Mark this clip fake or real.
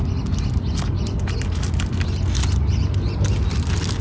real